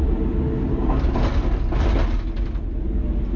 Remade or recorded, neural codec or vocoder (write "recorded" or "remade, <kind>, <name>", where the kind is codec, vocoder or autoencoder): recorded